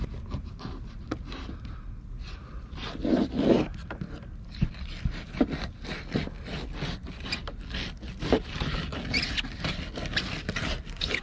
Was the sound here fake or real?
real